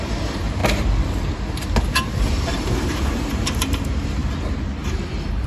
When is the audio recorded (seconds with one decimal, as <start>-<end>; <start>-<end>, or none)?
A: 0.6-1.8; 4.2-5.5